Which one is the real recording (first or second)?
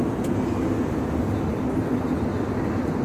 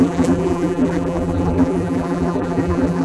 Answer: first